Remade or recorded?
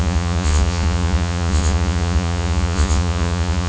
remade